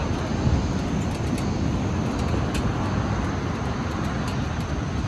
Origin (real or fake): real